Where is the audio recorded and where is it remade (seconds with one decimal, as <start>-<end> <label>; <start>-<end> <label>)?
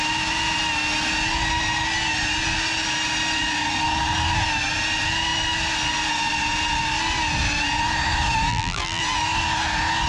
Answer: 0.0-8.5 recorded; 8.5-9.0 remade; 9.0-10.1 recorded